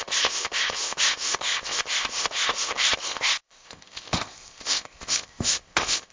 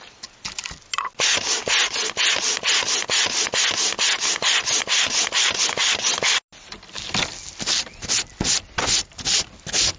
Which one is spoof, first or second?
first